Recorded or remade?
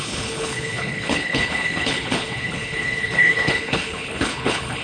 remade